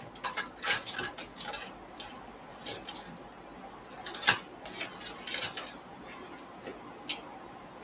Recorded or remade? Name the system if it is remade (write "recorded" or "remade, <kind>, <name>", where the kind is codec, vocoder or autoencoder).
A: recorded